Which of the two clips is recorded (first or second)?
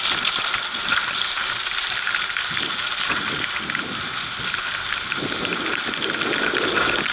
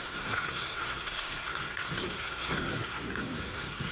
first